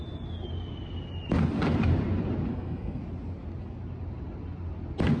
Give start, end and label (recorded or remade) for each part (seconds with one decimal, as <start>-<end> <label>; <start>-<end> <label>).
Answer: 0.0-2.5 recorded; 2.5-3.0 remade; 3.0-5.2 recorded